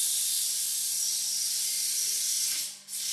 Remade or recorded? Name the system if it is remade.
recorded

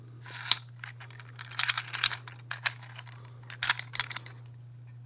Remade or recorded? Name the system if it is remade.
recorded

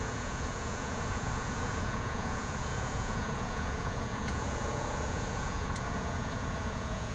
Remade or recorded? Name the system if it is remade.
remade, vocoder, Vocos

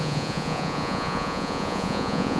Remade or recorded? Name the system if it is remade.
remade, vocoder, Vocos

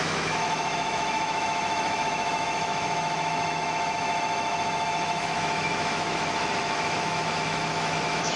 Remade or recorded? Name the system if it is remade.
remade, autoencoder, DAC-VAE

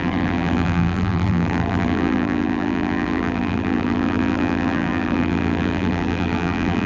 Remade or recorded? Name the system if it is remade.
remade, vocoder, BigVGAN v2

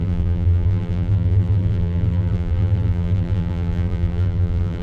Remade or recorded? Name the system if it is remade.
remade, vocoder, BigVGAN v2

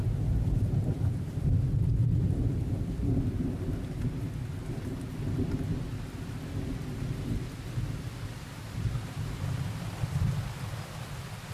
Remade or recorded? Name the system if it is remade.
recorded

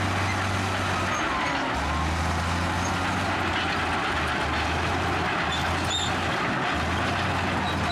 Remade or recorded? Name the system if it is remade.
recorded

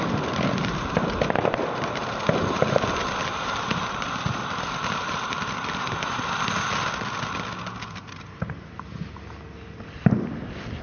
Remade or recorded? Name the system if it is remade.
recorded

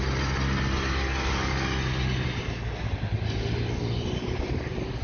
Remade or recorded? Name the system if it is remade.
recorded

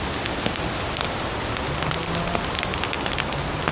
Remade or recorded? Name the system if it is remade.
recorded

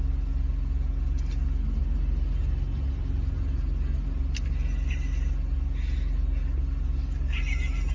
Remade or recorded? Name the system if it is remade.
recorded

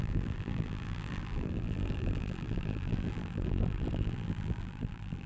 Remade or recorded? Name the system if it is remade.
remade, vocoder, BigVGAN v2